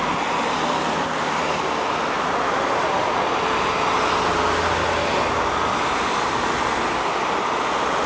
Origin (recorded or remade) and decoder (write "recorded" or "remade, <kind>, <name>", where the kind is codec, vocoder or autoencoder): recorded